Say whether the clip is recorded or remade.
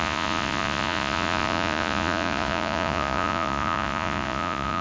remade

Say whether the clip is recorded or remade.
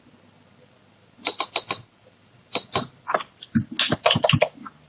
recorded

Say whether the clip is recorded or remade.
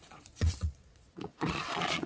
remade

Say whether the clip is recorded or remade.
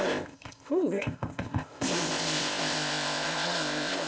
remade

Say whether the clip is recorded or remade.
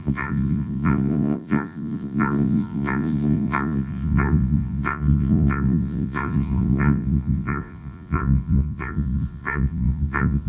remade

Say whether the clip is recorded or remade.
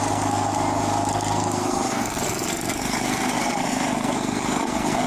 remade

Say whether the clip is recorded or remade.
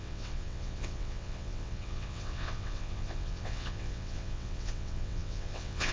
remade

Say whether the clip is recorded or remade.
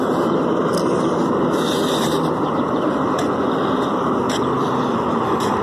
remade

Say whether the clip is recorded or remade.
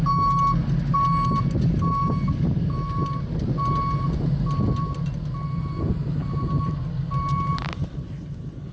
recorded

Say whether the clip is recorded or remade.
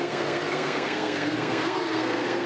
remade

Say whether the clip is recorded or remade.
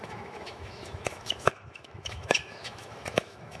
remade